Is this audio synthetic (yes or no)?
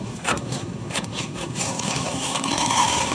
yes